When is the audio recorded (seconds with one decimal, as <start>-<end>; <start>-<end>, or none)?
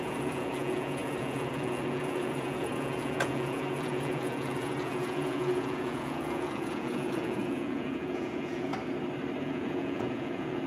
8.7-9.4